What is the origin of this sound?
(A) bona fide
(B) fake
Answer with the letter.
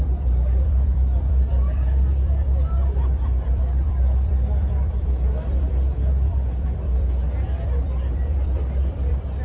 B